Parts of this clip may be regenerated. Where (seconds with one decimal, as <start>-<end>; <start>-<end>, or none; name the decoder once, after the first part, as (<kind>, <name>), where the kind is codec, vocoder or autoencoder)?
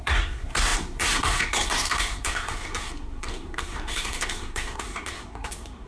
0.0-5.9 (codec, SNAC)